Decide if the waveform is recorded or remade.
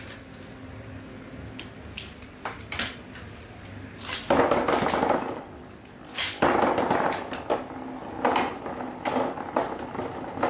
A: recorded